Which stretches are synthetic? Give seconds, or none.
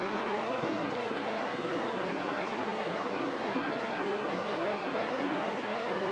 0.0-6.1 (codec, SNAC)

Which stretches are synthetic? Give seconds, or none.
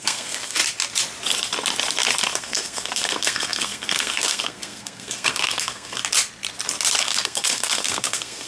0.0-0.6 (codec, SNAC); 2.3-6.0; 7.0-8.5